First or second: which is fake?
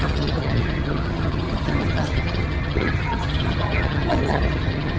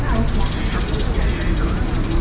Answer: first